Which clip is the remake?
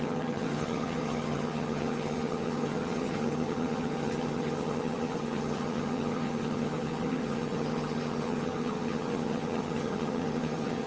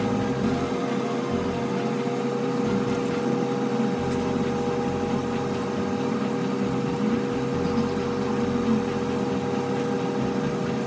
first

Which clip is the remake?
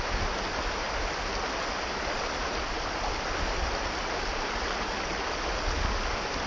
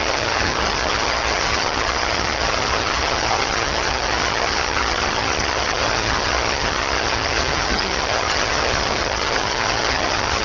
second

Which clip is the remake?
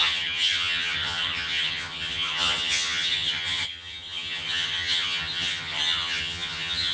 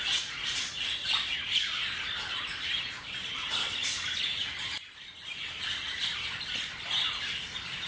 first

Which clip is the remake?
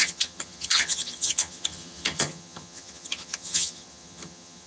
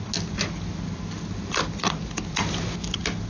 first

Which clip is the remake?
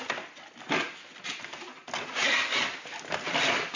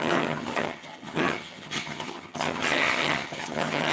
second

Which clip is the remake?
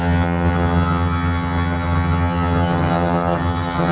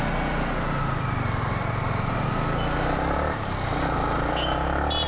first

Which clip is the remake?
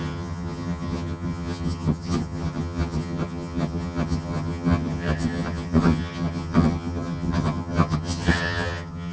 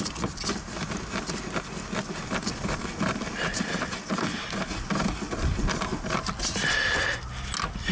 first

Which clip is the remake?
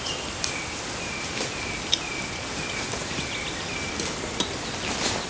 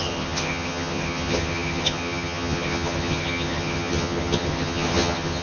second